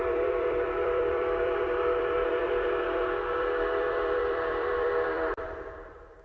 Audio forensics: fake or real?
fake